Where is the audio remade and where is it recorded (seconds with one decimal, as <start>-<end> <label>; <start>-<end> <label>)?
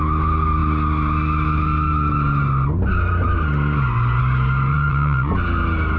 0.0-4.7 recorded; 4.7-5.3 remade; 5.3-6.0 recorded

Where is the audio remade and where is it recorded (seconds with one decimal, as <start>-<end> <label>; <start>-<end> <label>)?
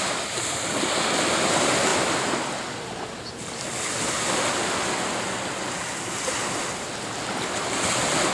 0.0-8.3 recorded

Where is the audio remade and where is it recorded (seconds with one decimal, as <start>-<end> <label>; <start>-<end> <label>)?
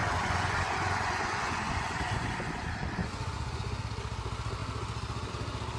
0.0-2.6 remade; 2.6-3.0 recorded; 3.0-3.8 remade; 3.8-5.8 recorded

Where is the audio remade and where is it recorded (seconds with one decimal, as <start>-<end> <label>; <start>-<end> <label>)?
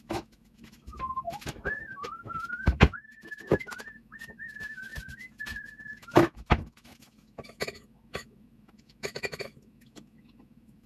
0.0-10.9 remade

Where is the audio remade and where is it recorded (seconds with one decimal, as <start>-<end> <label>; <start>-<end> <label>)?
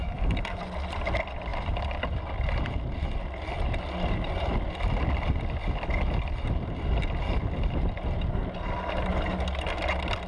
0.0-0.6 remade; 0.6-10.3 recorded